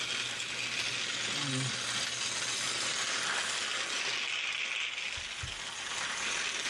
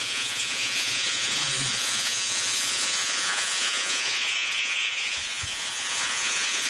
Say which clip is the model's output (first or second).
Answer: second